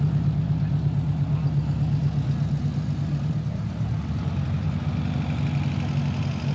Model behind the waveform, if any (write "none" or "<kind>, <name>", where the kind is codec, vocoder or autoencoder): none